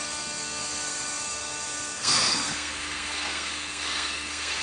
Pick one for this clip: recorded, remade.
remade